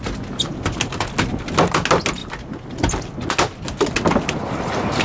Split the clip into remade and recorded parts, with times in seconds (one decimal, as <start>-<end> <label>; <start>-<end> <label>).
0.0-5.0 recorded